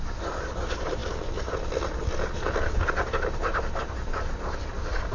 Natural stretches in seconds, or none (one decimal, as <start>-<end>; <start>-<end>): 0.0-5.1